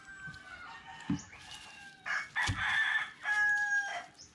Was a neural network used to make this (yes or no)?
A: no